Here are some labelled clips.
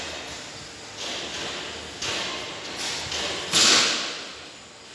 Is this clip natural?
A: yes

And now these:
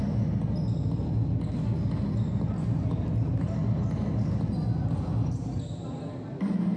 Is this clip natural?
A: yes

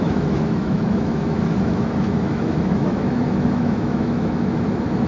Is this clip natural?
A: no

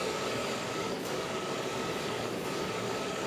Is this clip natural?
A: no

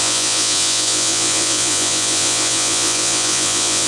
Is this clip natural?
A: no